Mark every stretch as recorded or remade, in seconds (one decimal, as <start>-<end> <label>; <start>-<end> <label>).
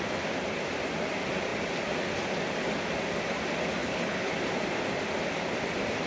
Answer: 0.0-3.8 recorded; 3.8-4.3 remade; 4.3-6.1 recorded